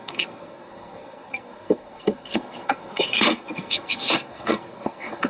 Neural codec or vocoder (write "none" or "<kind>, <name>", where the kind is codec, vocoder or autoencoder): codec, SNAC